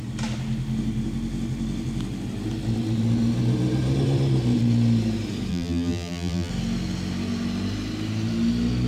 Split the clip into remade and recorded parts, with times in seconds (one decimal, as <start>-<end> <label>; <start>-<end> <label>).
0.0-5.5 recorded; 5.5-6.5 remade; 6.5-8.9 recorded